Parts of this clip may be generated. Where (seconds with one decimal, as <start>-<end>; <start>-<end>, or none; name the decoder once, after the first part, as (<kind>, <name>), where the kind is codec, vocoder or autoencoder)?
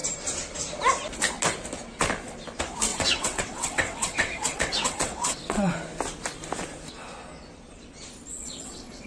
2.9-5.7 (vocoder, WaveNeXt); 8.3-9.1